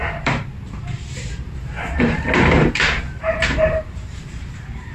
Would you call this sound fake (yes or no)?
yes